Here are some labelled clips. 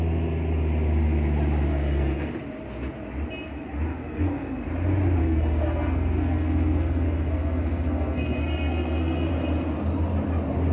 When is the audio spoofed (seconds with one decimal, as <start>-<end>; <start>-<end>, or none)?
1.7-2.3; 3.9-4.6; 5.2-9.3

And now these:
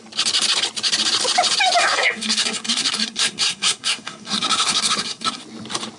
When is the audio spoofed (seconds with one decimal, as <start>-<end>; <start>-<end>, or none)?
1.8-5.4

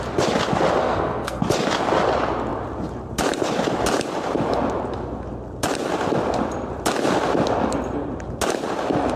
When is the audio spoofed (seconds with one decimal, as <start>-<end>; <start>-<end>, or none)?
0.8-1.4